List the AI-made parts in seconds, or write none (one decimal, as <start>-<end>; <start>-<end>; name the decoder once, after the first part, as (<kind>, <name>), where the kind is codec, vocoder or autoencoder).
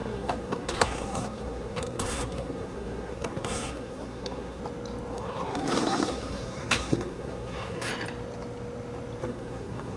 0.0-4.6 (codec, SNAC); 5.1-7.9; 9.2-10.0